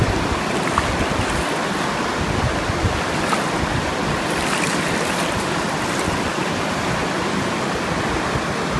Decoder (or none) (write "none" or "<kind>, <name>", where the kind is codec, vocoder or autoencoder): none